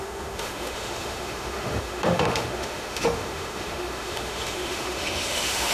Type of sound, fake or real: fake